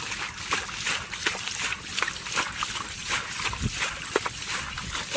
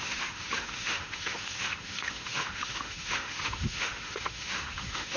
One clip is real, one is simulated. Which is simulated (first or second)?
second